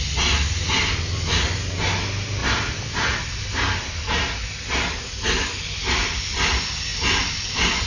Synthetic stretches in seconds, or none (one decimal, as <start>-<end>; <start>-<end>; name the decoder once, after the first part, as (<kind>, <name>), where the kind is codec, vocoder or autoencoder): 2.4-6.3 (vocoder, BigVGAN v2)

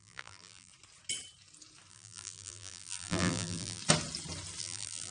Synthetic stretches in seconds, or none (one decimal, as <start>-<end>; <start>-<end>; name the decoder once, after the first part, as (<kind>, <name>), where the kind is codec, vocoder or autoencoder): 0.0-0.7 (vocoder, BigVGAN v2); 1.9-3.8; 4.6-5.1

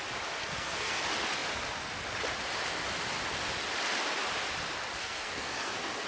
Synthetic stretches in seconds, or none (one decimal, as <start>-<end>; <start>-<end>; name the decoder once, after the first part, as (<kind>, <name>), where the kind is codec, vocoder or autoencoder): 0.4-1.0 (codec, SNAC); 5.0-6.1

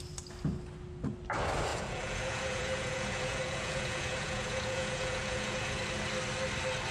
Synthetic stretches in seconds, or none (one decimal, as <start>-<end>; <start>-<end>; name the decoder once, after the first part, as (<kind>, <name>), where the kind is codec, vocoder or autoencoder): 1.7-5.8 (vocoder, Vocos)

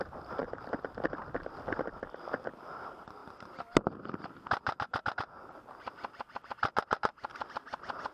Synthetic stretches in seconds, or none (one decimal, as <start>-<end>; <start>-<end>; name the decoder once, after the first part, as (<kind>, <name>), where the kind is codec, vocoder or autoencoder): none

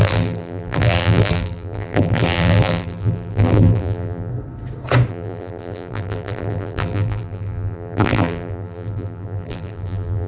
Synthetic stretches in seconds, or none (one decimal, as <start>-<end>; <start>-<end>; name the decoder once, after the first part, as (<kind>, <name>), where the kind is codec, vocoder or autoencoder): 0.0-4.3 (vocoder, BigVGAN v2); 5.1-10.3

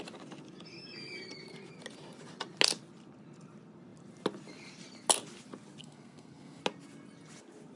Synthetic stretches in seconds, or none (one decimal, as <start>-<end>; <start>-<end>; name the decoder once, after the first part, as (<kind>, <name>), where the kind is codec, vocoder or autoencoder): 5.8-6.6 (codec, SNAC)